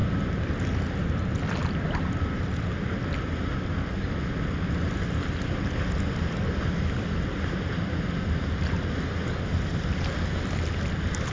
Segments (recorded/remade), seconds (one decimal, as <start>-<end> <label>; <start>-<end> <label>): 0.0-11.3 recorded